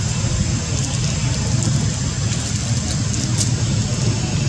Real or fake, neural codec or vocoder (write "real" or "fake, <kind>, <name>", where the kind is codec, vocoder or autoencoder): real